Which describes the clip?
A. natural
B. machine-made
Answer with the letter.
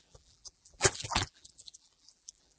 B